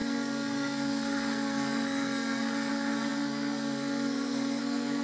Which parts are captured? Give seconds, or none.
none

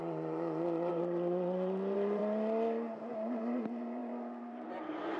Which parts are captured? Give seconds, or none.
0.0-0.9; 2.2-3.1

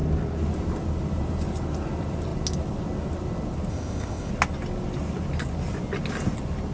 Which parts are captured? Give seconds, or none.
0.0-3.7; 4.3-6.7

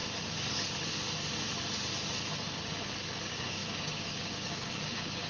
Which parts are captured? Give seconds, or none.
0.0-3.2

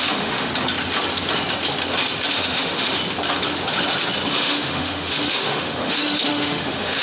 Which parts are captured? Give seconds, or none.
0.5-2.3; 3.0-4.3

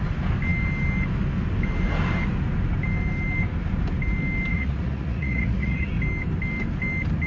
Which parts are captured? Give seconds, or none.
0.0-4.5; 5.9-7.3